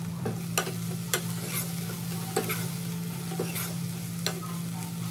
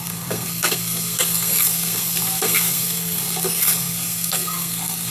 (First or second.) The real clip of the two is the first